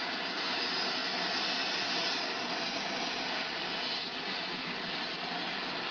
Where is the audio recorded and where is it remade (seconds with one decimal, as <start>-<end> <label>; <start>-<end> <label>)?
0.0-5.9 recorded